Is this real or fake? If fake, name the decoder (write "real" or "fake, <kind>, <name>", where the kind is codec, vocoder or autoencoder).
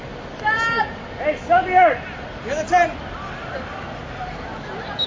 real